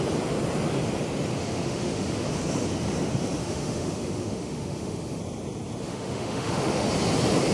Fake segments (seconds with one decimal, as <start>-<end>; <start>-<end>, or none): 1.3-2.2; 3.4-5.2; 5.8-6.9